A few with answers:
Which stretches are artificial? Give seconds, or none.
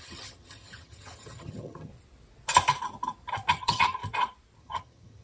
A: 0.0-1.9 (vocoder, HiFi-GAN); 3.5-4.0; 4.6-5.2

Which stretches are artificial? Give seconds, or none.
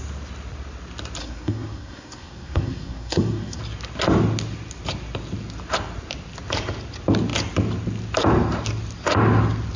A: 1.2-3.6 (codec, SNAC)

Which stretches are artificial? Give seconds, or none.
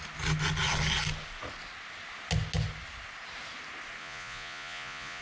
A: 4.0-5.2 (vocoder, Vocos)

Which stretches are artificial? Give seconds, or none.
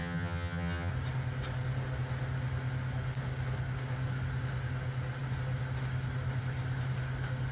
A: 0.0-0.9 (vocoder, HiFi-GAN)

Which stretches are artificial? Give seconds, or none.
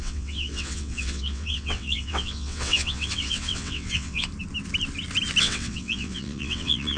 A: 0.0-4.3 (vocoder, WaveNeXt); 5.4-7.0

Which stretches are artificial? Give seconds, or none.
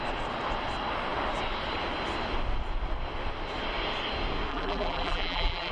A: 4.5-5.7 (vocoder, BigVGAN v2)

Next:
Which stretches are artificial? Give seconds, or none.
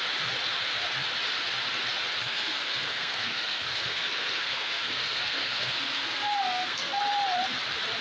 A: 2.2-7.0 (codec, SNAC)